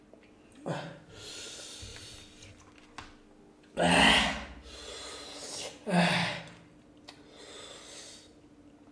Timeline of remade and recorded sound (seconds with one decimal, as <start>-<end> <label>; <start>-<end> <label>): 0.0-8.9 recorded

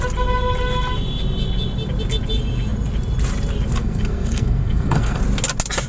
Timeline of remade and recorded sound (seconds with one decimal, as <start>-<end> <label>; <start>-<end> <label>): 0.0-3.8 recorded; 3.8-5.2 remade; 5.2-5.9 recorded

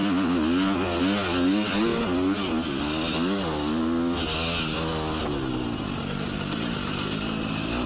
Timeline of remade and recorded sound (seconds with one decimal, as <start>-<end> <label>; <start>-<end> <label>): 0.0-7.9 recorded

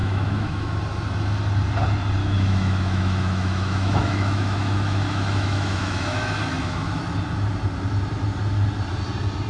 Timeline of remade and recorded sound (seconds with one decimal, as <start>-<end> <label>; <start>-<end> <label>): 0.0-0.8 remade; 0.8-2.2 recorded; 2.2-7.0 remade; 7.0-9.5 recorded

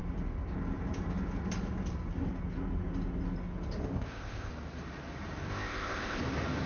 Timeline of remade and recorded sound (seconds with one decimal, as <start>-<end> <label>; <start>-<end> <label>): 0.0-3.8 recorded; 3.8-4.5 remade; 4.5-5.5 recorded; 5.5-6.2 remade; 6.2-6.7 recorded